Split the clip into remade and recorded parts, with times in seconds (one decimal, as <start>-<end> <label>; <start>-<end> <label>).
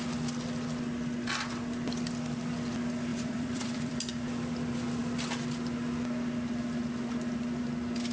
0.0-3.1 recorded; 3.1-4.1 remade; 4.1-8.1 recorded